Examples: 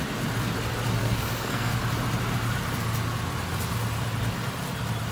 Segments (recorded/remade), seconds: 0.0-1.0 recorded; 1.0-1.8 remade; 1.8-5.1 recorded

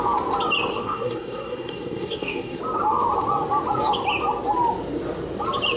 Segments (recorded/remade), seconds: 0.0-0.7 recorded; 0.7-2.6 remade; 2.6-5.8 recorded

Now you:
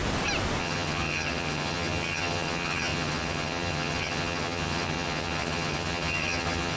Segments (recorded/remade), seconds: 0.0-0.6 recorded; 0.6-6.8 remade

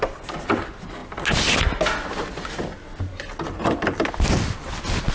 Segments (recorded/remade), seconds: 0.0-5.1 recorded